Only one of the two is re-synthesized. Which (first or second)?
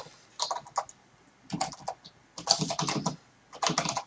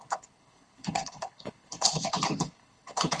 second